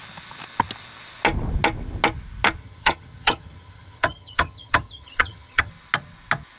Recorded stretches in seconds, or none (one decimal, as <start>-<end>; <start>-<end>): 0.0-2.6; 5.7-6.6